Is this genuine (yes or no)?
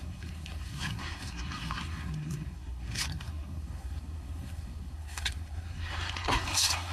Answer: no